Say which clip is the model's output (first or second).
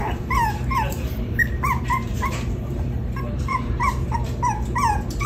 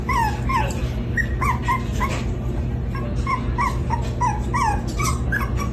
first